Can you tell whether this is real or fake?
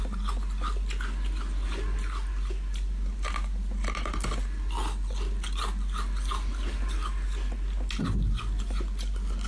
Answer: real